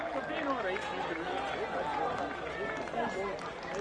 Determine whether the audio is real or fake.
real